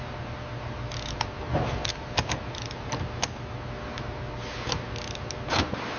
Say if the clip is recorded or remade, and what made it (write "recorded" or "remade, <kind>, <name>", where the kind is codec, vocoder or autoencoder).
recorded